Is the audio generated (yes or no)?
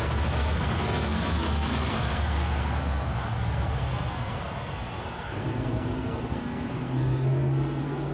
yes